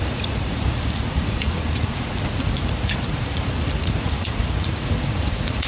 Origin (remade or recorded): remade